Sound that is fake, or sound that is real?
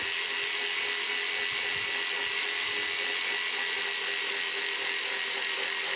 real